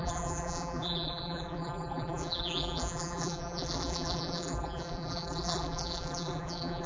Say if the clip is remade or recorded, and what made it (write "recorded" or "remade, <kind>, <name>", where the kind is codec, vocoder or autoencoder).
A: remade, vocoder, BigVGAN v2